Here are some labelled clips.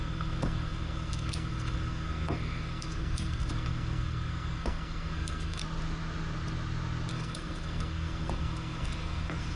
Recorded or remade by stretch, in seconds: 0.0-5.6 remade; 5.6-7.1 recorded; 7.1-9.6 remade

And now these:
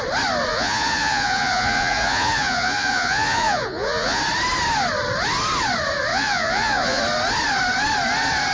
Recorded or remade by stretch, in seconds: 0.0-0.5 recorded; 0.5-4.2 remade; 4.2-6.1 recorded; 6.1-7.0 remade; 7.0-8.5 recorded